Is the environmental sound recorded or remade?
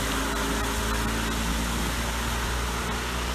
recorded